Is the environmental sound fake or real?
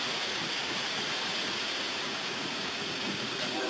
fake